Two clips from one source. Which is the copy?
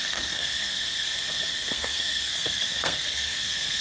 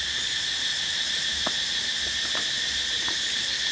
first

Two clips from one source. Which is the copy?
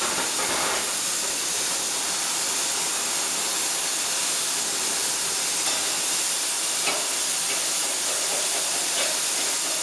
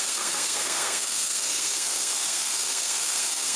second